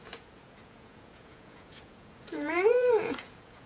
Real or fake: fake